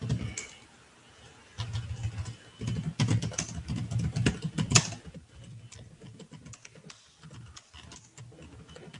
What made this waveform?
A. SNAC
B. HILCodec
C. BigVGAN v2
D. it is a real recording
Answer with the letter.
D